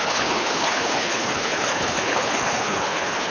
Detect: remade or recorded remade